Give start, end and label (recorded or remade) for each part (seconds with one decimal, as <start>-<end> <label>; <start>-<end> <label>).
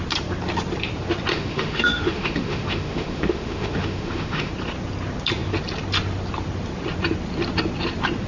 0.0-1.3 recorded; 1.3-4.5 remade; 4.5-8.3 recorded